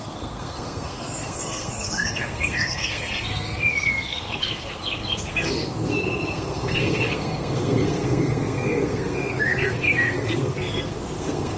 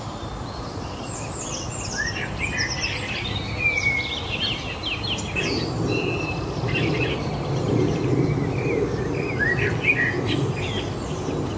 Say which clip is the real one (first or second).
second